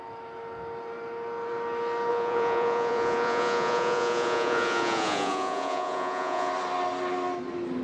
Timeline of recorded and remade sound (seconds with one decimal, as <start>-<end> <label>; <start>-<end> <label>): 0.0-2.1 recorded; 2.1-6.5 remade; 6.5-7.8 recorded